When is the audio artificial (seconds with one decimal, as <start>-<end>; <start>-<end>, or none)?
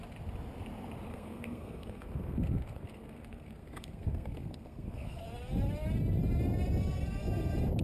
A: 1.1-5.2